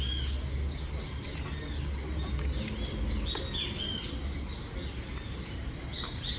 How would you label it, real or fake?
real